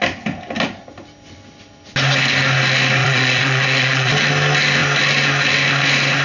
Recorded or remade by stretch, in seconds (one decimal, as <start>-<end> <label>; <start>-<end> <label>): 0.0-3.0 recorded; 3.0-4.1 remade; 4.1-6.2 recorded